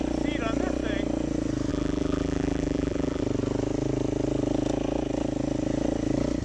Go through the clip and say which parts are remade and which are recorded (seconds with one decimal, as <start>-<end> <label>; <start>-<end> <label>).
0.0-1.7 recorded; 1.7-3.2 remade; 3.2-6.4 recorded